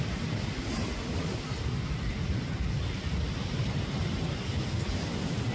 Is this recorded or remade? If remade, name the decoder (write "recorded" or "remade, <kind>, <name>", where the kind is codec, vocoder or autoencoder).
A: recorded